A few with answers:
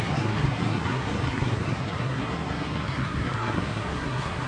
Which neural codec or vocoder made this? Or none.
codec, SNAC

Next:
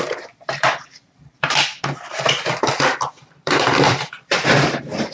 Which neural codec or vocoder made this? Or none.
vocoder, BigVGAN v2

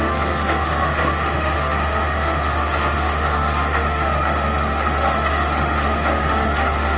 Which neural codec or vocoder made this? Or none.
autoencoder, DAC-VAE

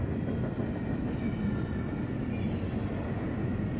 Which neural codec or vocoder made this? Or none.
none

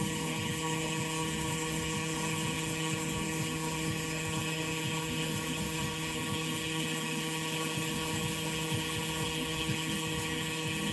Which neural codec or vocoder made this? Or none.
codec, HILCodec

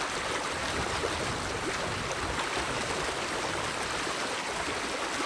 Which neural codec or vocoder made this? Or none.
none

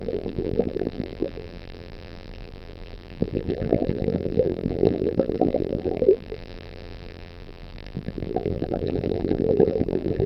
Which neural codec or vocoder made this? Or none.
vocoder, BigVGAN v2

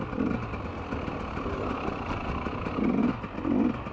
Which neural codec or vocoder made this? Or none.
none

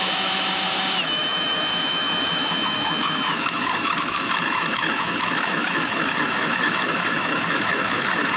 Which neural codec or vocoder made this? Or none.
autoencoder, DAC-VAE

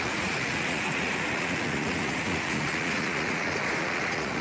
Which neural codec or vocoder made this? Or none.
vocoder, Vocos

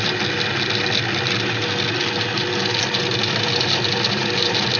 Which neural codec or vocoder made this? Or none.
none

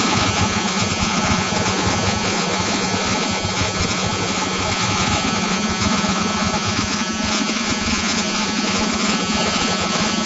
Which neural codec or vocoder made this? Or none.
vocoder, Vocos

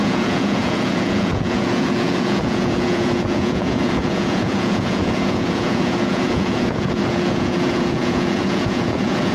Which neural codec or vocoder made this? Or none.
vocoder, Vocos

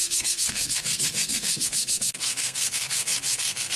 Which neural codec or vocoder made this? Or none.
codec, SNAC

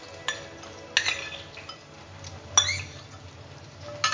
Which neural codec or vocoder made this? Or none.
none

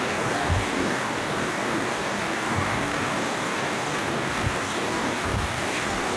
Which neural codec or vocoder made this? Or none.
codec, DAC